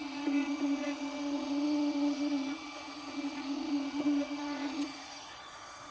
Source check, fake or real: fake